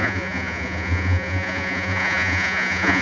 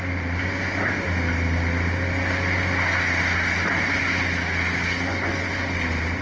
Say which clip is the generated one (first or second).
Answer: first